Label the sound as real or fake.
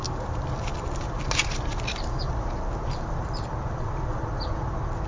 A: real